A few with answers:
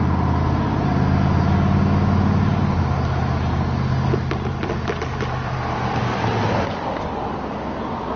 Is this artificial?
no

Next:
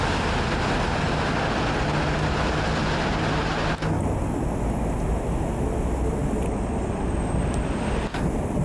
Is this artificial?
no